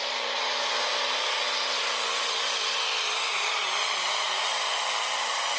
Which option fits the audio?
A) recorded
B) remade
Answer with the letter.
A